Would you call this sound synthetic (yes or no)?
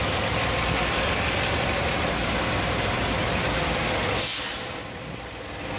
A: no